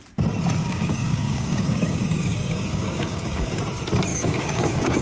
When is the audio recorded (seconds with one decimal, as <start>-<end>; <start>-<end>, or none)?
0.0-0.6; 3.6-4.1

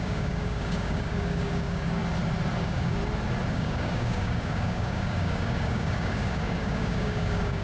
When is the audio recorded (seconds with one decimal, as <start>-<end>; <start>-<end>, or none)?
2.0-2.6; 3.0-3.5

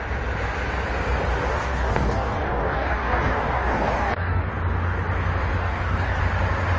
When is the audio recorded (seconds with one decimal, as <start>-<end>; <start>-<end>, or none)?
0.0-1.5; 4.4-5.6; 6.2-6.8

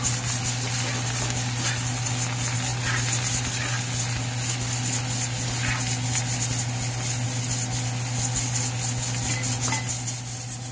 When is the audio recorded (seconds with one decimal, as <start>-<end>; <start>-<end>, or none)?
0.0-10.7

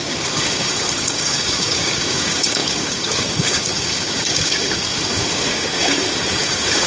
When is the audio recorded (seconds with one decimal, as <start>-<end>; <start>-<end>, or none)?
none

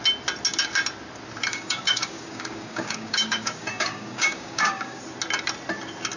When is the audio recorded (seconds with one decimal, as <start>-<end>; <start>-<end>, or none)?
0.0-1.5; 5.0-6.2

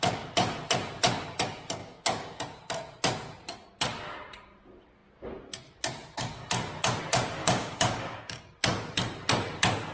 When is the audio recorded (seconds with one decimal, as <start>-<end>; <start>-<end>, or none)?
0.0-1.8; 2.4-7.4; 8.4-9.9